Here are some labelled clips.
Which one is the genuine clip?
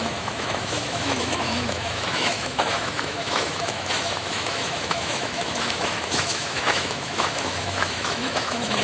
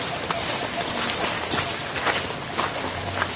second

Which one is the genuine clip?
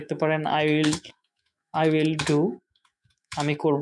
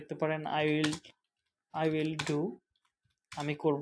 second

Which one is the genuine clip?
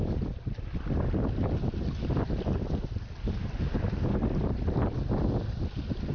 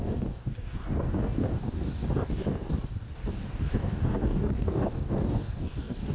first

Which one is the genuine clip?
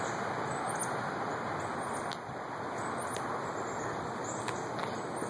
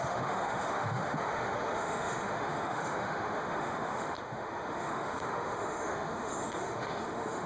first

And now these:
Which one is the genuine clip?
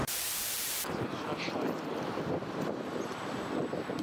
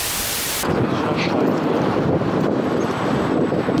second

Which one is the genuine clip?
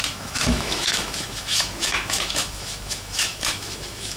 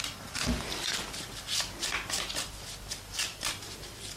second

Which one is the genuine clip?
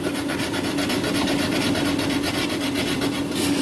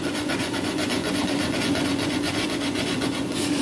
first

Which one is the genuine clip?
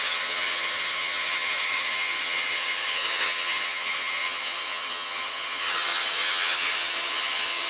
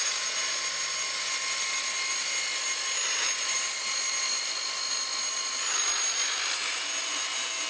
second